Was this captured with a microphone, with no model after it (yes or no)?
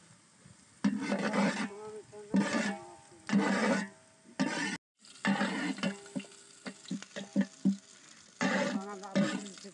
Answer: yes